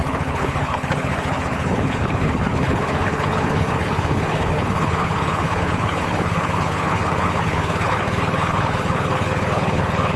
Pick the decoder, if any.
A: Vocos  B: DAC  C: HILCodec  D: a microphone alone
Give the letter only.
C